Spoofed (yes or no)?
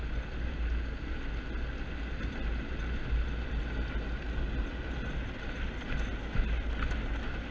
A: no